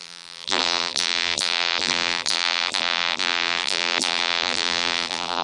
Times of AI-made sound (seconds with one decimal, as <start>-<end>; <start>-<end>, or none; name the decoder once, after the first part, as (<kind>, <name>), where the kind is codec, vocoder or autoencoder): 0.0-5.4 (vocoder, BigVGAN v2)